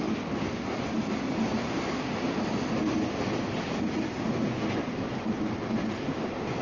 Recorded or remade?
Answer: recorded